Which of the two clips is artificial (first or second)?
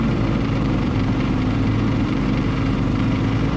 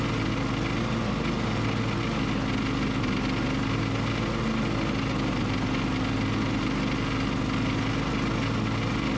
first